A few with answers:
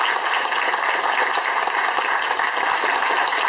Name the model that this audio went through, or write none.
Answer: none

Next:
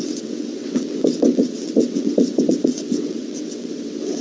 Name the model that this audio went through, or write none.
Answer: vocoder, WaveNeXt